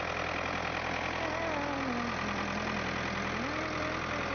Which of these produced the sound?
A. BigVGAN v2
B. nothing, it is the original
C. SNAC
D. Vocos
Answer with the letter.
B